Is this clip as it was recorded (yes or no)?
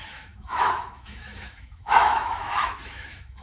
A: no